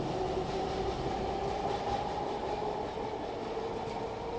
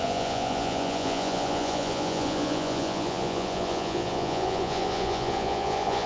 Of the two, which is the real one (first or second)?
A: first